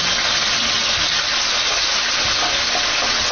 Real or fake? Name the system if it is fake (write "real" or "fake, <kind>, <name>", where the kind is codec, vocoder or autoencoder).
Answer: real